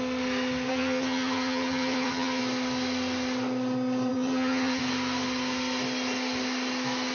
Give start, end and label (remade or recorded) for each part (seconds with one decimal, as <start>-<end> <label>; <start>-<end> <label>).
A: 0.0-0.7 recorded; 0.7-2.4 remade; 2.4-4.1 recorded; 4.1-4.8 remade; 4.8-7.1 recorded

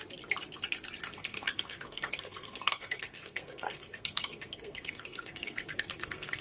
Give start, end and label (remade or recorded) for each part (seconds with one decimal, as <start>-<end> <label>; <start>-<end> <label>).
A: 0.0-1.1 recorded; 1.1-6.4 remade

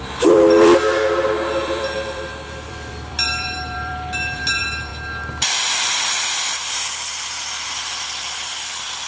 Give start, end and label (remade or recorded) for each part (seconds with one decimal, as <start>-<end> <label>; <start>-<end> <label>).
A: 0.0-4.9 remade; 4.9-5.4 recorded; 5.4-9.1 remade

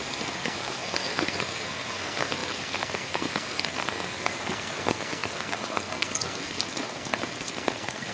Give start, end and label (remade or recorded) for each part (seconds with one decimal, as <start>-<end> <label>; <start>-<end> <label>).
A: 0.0-8.1 remade

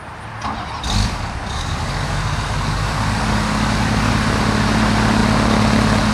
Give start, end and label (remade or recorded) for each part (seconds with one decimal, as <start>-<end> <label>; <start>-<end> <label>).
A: 0.0-1.0 recorded; 1.0-4.1 remade; 4.1-6.1 recorded

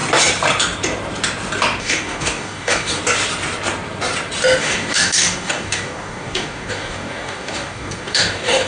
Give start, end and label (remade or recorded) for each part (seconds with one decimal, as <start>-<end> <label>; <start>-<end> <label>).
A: 0.0-1.8 recorded; 1.8-3.0 remade; 3.0-4.6 recorded; 4.6-8.7 remade

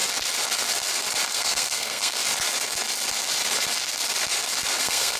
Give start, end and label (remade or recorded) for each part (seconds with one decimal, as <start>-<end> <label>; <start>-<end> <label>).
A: 0.0-1.3 recorded; 1.3-2.2 remade; 2.2-4.8 recorded; 4.8-5.2 remade

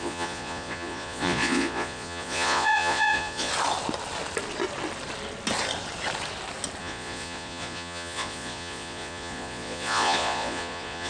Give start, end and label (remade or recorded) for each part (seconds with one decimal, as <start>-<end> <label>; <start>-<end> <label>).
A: 0.0-3.5 remade; 3.5-6.8 recorded; 6.8-11.1 remade